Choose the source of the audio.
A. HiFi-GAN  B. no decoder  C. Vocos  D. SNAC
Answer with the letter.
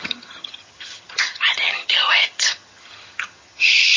A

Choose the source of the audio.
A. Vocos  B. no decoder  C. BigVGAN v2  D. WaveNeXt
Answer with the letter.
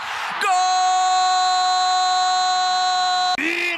B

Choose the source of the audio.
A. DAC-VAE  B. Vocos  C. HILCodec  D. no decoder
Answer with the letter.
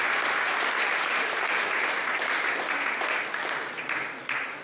D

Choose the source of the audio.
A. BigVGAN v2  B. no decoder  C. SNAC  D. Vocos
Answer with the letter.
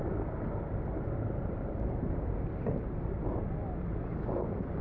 B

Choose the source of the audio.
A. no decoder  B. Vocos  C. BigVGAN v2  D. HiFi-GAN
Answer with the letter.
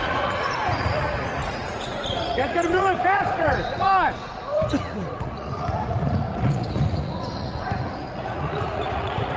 B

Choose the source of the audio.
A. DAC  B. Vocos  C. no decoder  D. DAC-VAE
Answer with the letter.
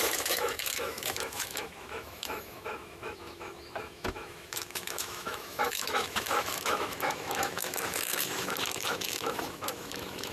D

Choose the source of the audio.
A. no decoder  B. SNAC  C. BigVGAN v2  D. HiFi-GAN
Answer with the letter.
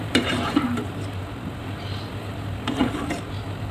C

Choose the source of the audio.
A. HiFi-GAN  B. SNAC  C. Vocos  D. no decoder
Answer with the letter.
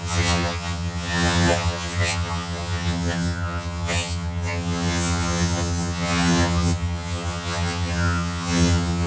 A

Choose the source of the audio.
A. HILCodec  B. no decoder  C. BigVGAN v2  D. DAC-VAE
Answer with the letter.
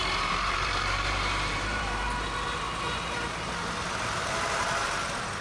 C